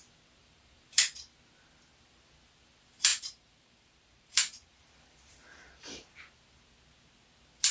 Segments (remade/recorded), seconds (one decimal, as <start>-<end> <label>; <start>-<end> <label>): 0.0-0.4 recorded; 0.4-1.3 remade; 1.3-3.1 recorded; 3.1-6.2 remade; 6.2-7.7 recorded